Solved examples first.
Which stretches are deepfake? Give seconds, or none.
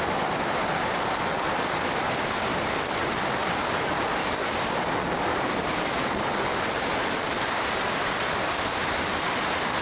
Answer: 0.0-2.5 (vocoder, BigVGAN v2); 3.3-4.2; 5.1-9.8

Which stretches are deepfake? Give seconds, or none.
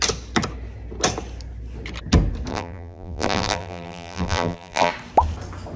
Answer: 2.5-4.9 (vocoder, BigVGAN v2)